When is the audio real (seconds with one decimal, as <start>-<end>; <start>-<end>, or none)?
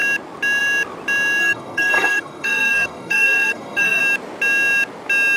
0.0-1.4; 4.0-5.4